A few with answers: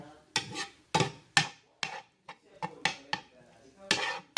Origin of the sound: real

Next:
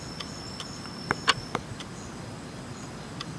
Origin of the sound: real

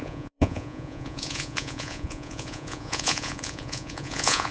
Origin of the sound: fake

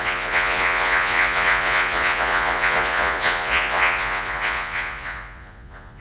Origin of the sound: fake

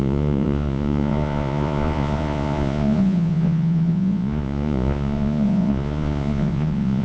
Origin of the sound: fake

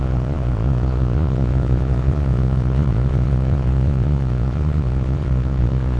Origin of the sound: fake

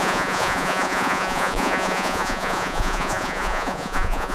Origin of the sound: fake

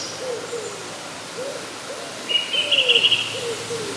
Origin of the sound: real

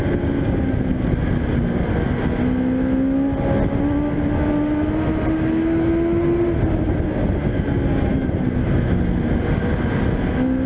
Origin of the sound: real